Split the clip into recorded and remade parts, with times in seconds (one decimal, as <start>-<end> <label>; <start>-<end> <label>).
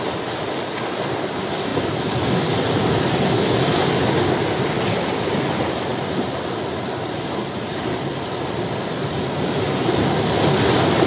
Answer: 0.0-1.7 remade; 1.7-3.9 recorded; 3.9-11.1 remade